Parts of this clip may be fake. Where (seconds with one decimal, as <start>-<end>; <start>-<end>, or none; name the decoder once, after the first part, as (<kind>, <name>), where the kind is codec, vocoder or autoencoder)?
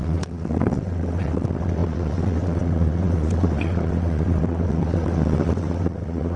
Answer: 0.0-6.4 (vocoder, WaveNeXt)